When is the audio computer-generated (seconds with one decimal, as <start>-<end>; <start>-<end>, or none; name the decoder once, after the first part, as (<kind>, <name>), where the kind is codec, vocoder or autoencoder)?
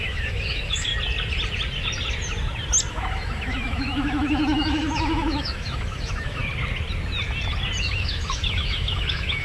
0.0-0.9 (autoencoder, DAC-VAE); 2.9-6.4; 7.8-9.4